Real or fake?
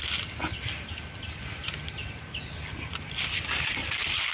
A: real